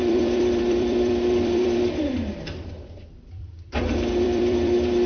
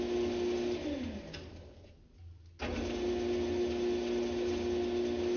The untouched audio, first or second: second